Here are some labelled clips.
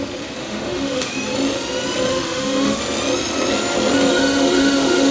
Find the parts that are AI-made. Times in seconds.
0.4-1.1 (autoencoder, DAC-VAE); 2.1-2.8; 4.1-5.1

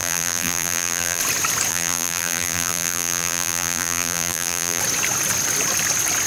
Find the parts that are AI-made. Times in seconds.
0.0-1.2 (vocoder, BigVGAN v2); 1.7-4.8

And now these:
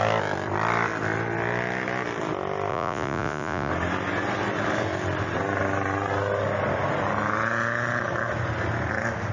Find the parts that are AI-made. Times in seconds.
2.7-3.7 (vocoder, Vocos)